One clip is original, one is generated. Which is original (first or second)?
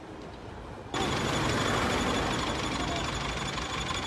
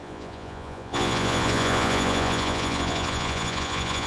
first